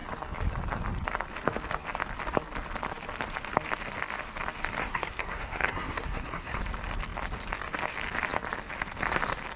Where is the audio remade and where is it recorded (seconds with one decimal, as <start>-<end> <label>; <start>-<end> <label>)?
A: 0.0-4.8 recorded; 4.8-6.6 remade; 6.6-9.6 recorded